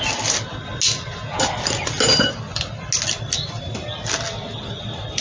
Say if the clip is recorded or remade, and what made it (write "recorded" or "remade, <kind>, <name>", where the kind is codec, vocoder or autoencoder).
recorded